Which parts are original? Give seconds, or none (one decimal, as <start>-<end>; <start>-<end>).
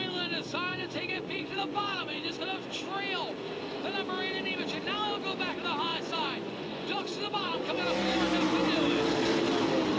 0.0-0.7; 2.3-5.9; 7.8-10.0